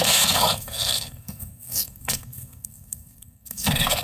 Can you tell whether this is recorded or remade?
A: remade